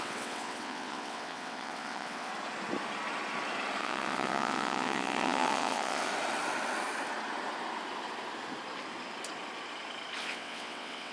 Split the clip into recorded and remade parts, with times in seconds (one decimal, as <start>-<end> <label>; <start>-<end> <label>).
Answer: 0.0-2.3 remade; 2.3-3.8 recorded; 3.8-6.1 remade; 6.1-10.2 recorded; 10.2-11.1 remade